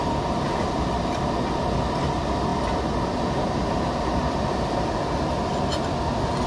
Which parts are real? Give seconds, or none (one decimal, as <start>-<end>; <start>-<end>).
0.0-6.5